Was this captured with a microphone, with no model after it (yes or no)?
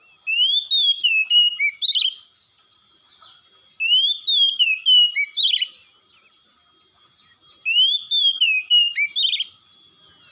yes